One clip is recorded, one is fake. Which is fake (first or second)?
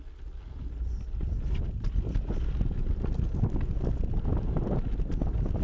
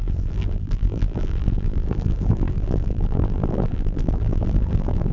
second